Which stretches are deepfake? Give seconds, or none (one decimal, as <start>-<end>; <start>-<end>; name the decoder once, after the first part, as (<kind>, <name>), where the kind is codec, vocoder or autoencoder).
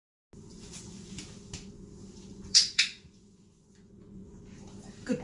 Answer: 0.5-1.2 (vocoder, Vocos); 2.3-4.4